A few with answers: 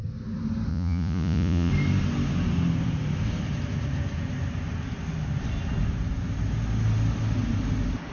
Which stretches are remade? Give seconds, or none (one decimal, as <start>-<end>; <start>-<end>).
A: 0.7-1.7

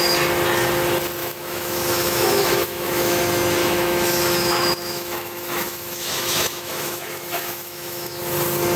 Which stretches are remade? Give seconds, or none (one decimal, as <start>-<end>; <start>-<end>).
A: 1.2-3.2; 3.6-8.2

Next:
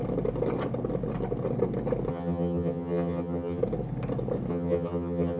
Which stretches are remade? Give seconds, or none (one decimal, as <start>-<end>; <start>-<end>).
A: 2.1-3.6; 4.5-5.4